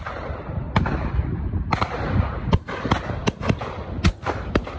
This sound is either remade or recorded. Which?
recorded